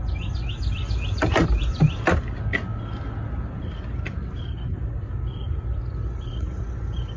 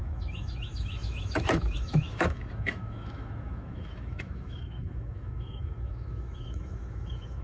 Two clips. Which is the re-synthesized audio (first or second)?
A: second